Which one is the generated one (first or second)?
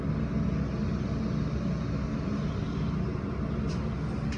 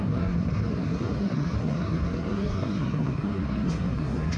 second